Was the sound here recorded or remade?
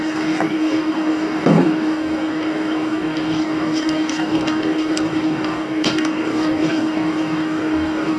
remade